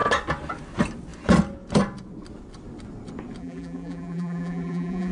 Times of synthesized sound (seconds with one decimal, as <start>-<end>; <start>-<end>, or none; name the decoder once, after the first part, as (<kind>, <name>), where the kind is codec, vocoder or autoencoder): 3.4-5.1 (vocoder, BigVGAN v2)